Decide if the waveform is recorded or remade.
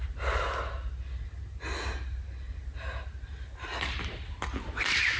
recorded